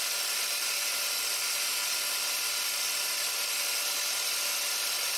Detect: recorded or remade recorded